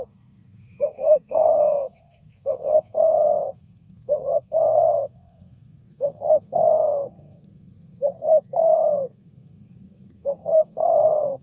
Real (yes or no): no